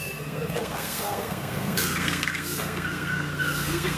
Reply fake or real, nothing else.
fake